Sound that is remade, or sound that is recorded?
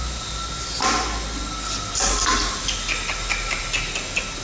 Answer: recorded